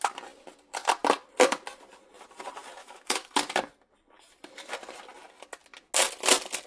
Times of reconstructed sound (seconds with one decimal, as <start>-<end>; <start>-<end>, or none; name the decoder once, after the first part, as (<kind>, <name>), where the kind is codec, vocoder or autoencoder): 2.8-3.3 (autoencoder, DAC-VAE)